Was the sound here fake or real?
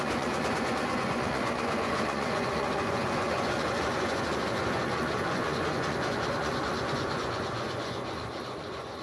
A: fake